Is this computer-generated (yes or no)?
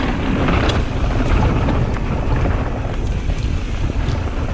yes